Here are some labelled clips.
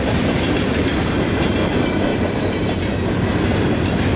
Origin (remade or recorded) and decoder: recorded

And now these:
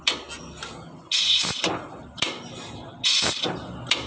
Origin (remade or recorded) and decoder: recorded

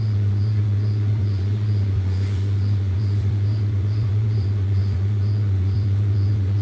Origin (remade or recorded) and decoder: remade, vocoder, Vocos